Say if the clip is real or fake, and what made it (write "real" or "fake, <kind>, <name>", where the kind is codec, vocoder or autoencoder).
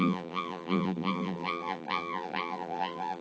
fake, vocoder, BigVGAN v2